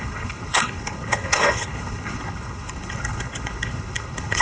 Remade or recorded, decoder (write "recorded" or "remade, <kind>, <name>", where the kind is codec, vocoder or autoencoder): remade, codec, HILCodec